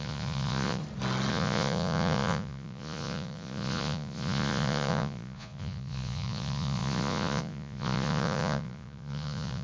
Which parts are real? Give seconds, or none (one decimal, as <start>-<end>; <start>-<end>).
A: 0.8-1.3